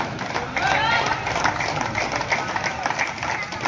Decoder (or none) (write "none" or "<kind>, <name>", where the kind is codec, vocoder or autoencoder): none